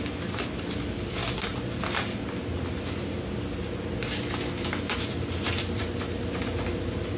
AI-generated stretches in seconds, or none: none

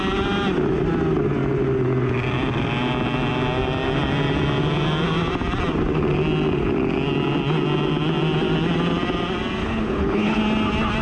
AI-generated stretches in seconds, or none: 9.6-10.4 (codec, HILCodec)

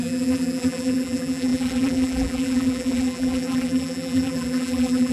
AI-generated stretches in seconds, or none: 0.0-5.1 (vocoder, BigVGAN v2)